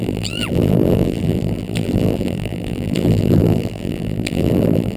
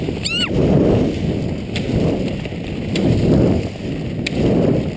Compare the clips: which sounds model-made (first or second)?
first